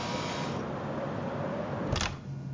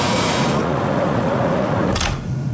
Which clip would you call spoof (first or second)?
second